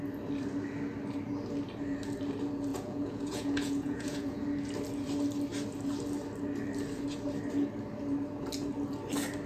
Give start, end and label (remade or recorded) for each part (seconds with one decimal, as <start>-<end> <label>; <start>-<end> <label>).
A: 0.0-2.7 recorded; 2.7-4.4 remade; 4.4-9.5 recorded

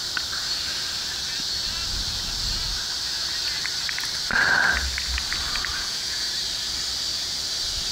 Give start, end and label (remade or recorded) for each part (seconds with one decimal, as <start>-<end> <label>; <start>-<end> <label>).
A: 0.0-5.7 recorded; 5.7-6.3 remade; 6.3-7.9 recorded

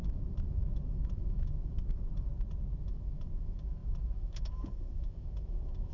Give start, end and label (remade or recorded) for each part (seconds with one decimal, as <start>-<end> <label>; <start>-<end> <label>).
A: 0.0-2.3 remade; 2.3-2.8 recorded; 2.8-5.9 remade

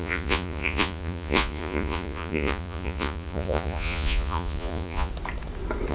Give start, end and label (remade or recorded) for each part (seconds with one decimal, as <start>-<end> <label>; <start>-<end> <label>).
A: 0.0-5.1 remade; 5.1-5.9 recorded